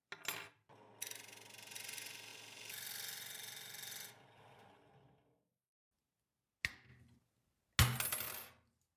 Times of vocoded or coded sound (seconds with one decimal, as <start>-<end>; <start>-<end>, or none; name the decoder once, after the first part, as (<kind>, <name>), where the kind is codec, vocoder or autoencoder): none